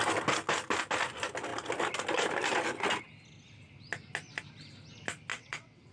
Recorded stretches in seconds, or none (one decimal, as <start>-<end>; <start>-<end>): 0.0-5.3